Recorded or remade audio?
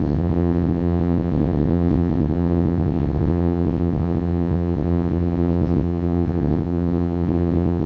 remade